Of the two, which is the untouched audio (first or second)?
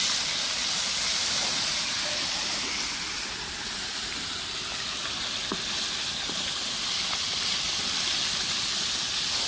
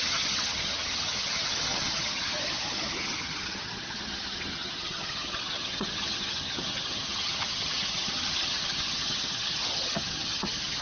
first